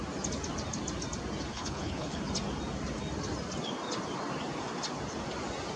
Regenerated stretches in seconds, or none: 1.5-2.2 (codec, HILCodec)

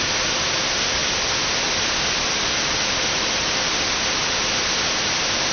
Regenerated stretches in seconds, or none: none

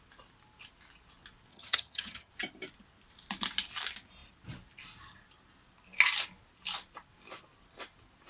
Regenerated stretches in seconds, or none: 1.5-2.3 (vocoder, HiFi-GAN)

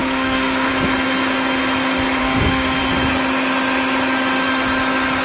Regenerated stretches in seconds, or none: 0.0-0.7 (autoencoder, DAC-VAE); 2.2-2.8